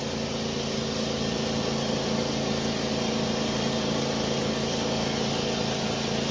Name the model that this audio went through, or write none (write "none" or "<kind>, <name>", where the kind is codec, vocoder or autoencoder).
none